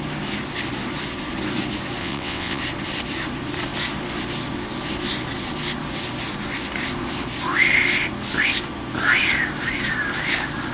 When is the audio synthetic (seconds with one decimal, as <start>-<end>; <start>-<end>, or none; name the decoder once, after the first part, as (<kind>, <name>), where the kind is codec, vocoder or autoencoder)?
2.0-2.6 (vocoder, WaveNeXt)